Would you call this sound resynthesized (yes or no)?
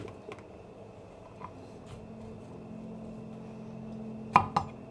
no